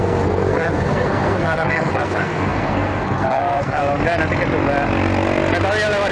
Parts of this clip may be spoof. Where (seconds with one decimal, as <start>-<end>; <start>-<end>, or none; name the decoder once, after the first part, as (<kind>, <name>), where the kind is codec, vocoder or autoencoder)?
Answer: 0.0-3.8 (codec, SNAC)